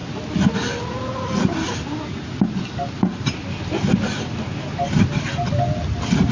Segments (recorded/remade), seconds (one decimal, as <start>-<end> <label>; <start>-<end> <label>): 0.0-6.3 recorded